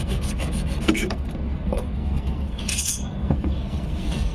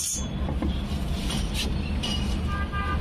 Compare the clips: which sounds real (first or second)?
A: second